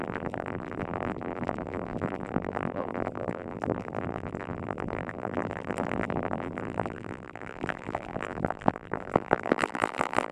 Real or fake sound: fake